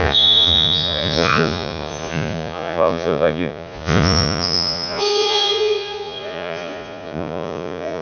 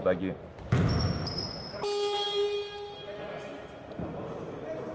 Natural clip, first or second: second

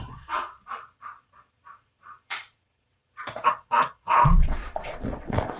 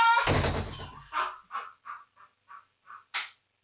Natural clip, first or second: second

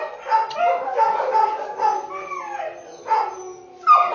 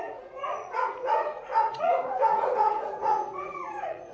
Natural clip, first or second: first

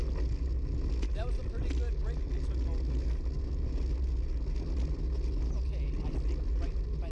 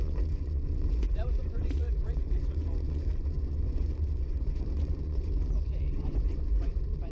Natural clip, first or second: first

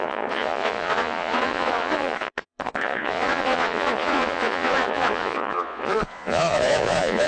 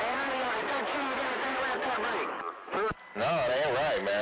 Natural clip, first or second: second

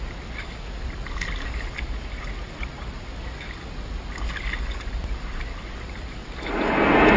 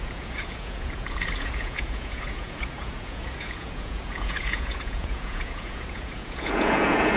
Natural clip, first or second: first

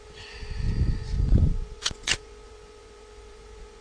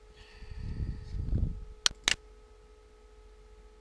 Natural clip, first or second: second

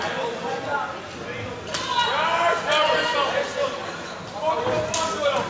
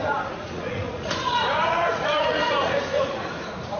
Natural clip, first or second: first